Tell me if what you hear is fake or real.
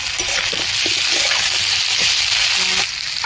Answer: real